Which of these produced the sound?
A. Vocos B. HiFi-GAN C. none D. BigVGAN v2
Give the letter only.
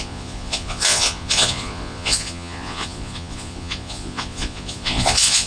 A